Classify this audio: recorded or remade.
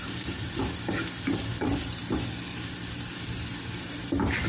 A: remade